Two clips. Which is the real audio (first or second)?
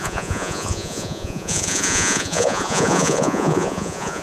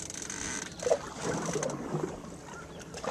second